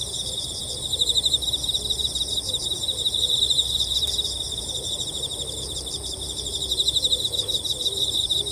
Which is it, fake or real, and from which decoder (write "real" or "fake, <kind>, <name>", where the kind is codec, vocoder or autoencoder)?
fake, vocoder, BigVGAN v2